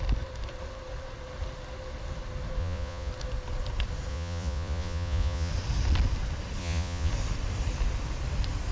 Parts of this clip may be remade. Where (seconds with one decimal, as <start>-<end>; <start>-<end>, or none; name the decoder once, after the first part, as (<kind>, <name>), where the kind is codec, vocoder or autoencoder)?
2.6-3.1 (vocoder, Vocos); 4.1-5.5; 6.6-7.1